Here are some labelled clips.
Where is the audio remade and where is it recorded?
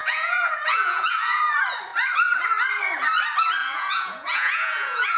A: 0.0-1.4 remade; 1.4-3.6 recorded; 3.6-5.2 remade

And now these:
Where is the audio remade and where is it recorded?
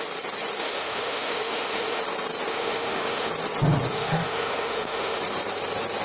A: 0.0-0.6 recorded; 0.6-2.0 remade; 2.0-2.5 recorded; 2.5-3.3 remade; 3.3-3.9 recorded; 3.9-5.2 remade; 5.2-6.0 recorded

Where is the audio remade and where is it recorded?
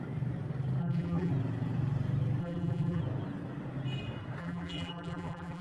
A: 0.0-0.8 recorded; 0.8-1.3 remade; 1.3-2.4 recorded; 2.4-3.0 remade; 3.0-4.4 recorded; 4.4-5.6 remade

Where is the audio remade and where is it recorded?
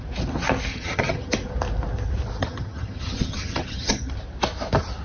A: 0.0-0.7 recorded; 0.7-1.3 remade; 1.3-2.4 recorded; 2.4-4.1 remade; 4.1-5.0 recorded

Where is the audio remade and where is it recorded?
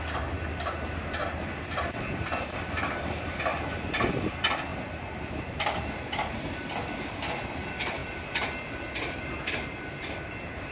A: 0.0-4.7 recorded; 4.7-6.7 remade; 6.7-10.7 recorded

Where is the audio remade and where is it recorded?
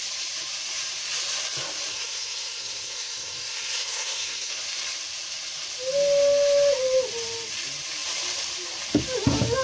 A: 0.0-1.9 recorded; 1.9-4.5 remade; 4.5-9.6 recorded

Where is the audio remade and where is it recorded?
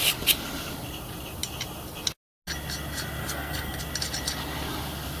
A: 0.0-3.2 recorded; 3.2-3.8 remade; 3.8-5.2 recorded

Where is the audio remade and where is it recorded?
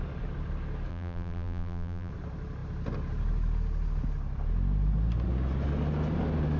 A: 0.0-0.9 recorded; 0.9-2.1 remade; 2.1-6.6 recorded